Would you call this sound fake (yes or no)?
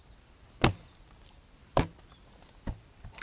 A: no